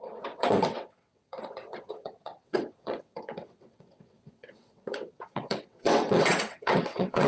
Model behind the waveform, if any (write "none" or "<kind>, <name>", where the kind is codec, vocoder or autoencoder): vocoder, WaveNeXt